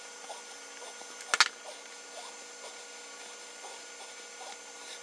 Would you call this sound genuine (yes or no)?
yes